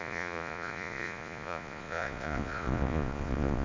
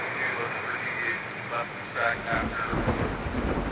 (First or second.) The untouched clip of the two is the second